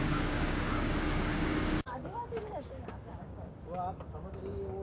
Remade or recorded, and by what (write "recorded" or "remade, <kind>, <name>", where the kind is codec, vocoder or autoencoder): remade, codec, DAC